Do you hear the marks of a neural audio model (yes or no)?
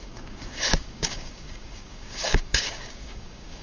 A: yes